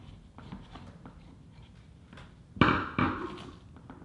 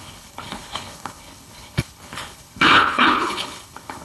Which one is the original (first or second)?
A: first